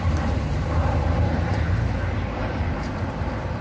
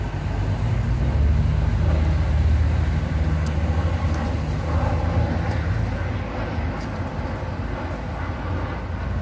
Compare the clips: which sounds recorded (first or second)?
second